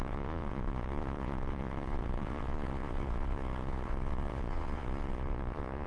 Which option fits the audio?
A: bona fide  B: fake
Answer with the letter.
B